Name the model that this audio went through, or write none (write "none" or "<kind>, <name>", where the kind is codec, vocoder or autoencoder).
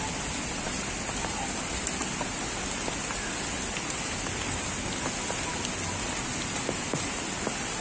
none